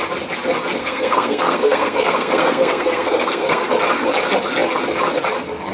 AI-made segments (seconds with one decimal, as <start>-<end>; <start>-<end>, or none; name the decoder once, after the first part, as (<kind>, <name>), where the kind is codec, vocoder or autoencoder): 0.8-3.7 (codec, SNAC)